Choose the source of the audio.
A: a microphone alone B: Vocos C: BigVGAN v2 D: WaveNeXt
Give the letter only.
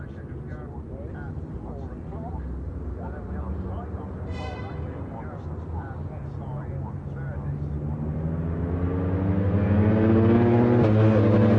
A